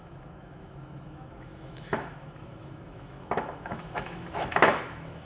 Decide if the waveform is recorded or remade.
remade